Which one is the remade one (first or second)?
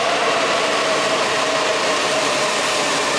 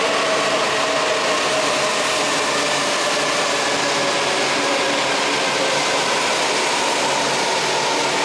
first